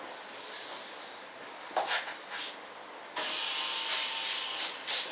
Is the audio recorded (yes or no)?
yes